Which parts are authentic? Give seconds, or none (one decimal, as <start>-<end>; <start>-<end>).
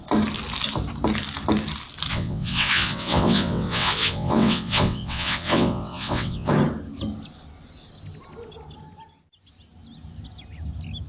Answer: 0.0-2.1; 6.5-11.1